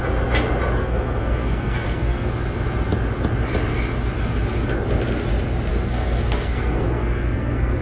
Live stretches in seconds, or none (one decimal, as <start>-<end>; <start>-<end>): 0.0-0.8; 2.3-5.7